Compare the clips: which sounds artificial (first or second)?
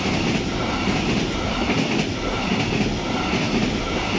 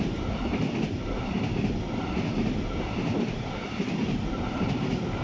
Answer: second